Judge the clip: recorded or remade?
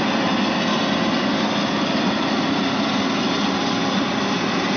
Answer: recorded